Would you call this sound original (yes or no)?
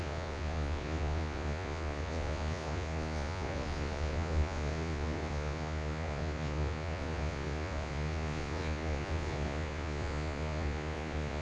no